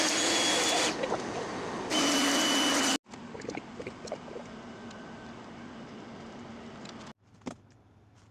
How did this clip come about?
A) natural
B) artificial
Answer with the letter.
A